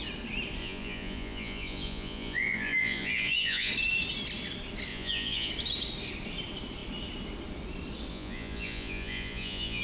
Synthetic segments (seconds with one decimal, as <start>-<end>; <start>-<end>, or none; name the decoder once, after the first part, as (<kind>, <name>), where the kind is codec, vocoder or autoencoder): 0.6-3.7 (vocoder, Vocos); 4.9-5.5; 8.1-9.8